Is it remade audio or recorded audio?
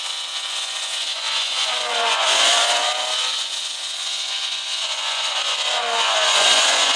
remade